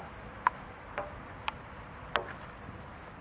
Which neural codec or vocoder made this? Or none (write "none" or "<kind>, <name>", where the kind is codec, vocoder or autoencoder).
none